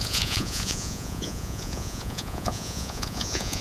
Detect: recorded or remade remade